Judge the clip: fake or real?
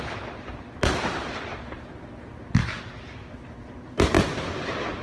fake